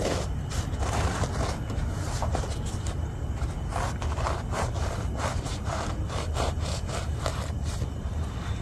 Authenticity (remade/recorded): recorded